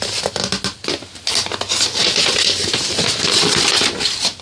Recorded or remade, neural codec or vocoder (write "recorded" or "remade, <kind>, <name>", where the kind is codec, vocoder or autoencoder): recorded